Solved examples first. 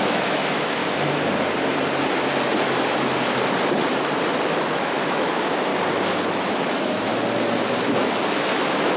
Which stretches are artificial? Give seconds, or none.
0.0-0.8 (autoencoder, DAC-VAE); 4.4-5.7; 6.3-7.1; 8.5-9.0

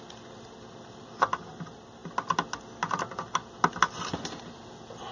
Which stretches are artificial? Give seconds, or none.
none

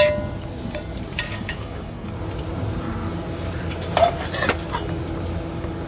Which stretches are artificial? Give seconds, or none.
1.3-2.1 (codec, DAC)